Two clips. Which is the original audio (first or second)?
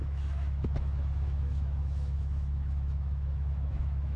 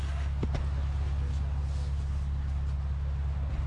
second